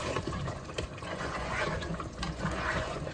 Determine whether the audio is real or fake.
fake